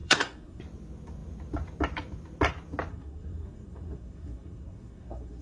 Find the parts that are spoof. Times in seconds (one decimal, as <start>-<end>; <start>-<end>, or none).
0.0-0.6; 2.9-5.4